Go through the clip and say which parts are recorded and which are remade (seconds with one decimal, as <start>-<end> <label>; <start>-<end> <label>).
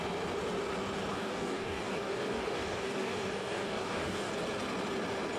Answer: 0.0-1.1 recorded; 1.1-4.3 remade; 4.3-5.4 recorded